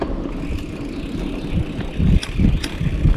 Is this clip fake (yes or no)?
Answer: no